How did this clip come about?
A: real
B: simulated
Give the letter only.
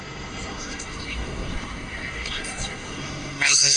B